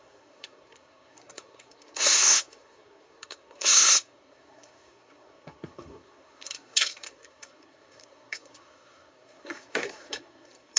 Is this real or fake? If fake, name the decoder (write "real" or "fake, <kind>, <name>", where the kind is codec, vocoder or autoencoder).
fake, codec, SNAC